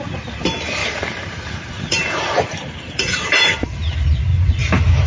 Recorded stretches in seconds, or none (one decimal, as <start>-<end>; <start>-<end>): 0.0-0.8; 3.9-4.3